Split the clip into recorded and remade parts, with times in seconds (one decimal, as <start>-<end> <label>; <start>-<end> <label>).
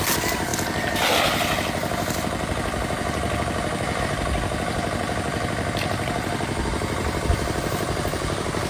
0.0-0.5 remade; 0.5-4.0 recorded; 4.0-8.7 remade